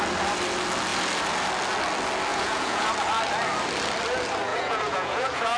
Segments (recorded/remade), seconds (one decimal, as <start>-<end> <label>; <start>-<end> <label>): 0.0-2.3 recorded; 2.3-2.9 remade; 2.9-4.5 recorded; 4.5-5.6 remade